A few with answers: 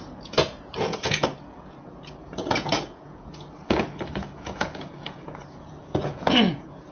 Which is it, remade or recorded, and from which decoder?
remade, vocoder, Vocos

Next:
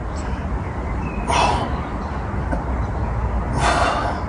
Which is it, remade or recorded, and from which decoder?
recorded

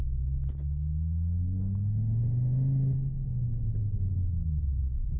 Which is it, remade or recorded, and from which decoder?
recorded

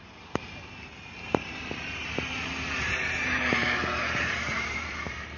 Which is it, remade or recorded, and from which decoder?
remade, vocoder, BigVGAN v2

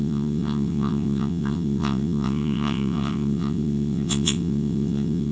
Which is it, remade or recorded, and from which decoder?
remade, vocoder, WaveNeXt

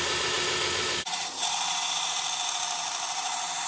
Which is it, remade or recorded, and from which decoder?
remade, vocoder, BigVGAN v2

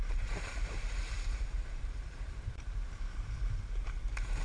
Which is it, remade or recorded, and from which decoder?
remade, vocoder, BigVGAN v2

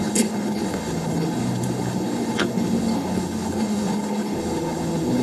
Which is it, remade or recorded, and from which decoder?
remade, codec, HILCodec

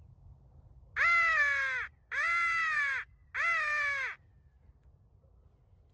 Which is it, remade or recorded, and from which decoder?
recorded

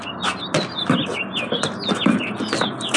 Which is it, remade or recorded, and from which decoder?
recorded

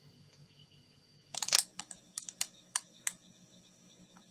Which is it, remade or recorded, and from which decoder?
remade, autoencoder, DAC-VAE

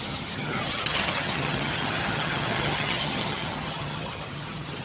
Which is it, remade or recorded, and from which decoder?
remade, vocoder, HiFi-GAN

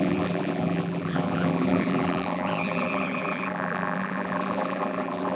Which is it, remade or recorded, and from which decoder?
remade, vocoder, BigVGAN v2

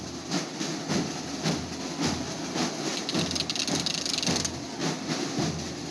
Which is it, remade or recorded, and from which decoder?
recorded